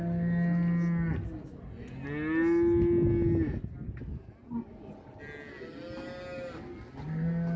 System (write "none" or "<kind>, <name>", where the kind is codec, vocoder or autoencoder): none